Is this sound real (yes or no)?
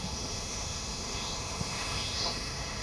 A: no